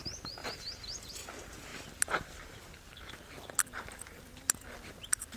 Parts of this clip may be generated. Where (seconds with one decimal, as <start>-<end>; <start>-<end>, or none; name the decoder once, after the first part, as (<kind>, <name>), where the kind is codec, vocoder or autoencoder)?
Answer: 0.0-0.4 (vocoder, BigVGAN v2); 1.1-1.7; 4.9-5.4